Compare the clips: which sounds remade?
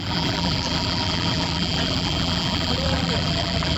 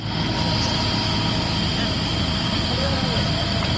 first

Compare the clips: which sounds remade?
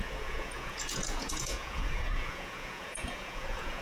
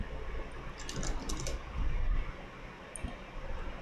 first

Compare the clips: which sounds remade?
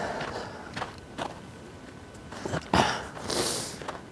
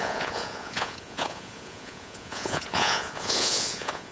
second